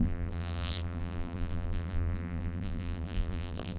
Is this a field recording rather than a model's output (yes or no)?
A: no